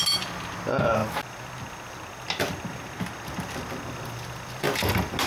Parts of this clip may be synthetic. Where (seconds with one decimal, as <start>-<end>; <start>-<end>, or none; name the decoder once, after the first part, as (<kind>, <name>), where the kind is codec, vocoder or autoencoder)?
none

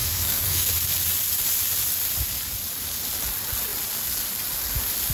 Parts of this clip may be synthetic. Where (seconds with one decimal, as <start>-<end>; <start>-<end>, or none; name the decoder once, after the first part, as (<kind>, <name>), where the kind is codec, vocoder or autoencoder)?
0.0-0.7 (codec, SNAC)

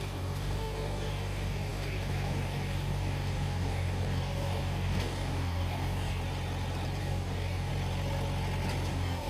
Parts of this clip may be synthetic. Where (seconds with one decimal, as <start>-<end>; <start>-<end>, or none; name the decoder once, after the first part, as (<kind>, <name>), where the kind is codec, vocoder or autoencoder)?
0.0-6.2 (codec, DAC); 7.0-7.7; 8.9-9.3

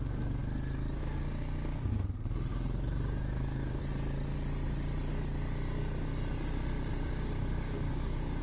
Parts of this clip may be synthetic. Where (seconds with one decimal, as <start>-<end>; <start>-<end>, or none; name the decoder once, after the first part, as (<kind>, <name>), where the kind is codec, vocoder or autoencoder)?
2.5-3.8 (codec, DAC); 6.9-8.4